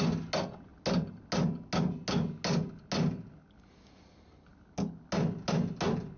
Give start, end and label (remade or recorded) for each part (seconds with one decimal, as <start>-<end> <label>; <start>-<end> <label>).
0.0-6.2 recorded